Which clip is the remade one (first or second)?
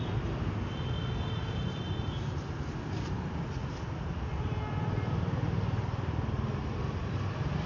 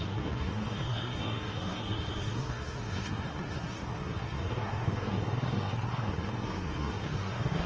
second